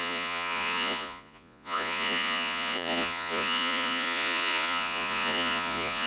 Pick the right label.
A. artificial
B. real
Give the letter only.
A